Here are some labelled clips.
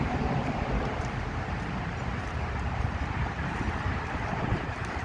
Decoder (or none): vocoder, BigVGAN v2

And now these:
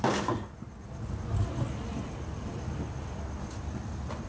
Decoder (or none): none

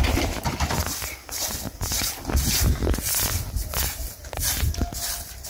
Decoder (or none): none